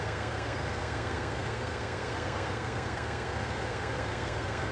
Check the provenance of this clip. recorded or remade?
remade